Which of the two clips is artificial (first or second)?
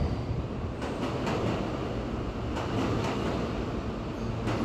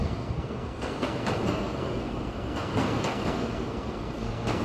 second